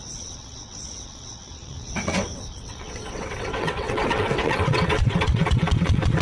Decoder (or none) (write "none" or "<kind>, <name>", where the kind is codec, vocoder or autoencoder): vocoder, WaveNeXt